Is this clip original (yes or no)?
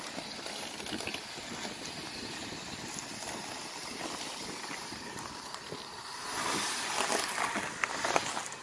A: yes